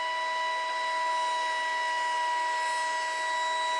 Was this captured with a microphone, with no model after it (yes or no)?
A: yes